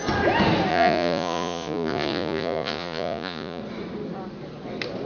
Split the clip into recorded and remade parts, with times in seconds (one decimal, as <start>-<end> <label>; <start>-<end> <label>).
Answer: 0.0-0.7 recorded; 0.7-3.6 remade; 3.6-5.1 recorded